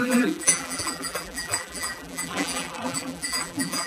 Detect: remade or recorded remade